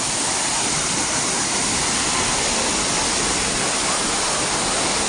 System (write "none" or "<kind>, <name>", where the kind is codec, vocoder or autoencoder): none